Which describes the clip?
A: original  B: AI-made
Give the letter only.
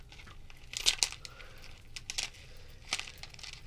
A